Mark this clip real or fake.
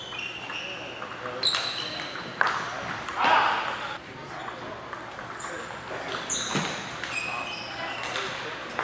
real